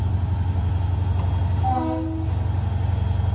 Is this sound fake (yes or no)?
no